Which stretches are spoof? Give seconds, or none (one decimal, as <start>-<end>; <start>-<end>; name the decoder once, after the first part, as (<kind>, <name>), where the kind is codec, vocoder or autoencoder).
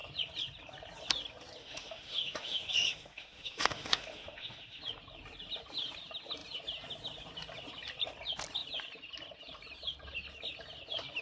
1.6-4.8 (autoencoder, DAC-VAE)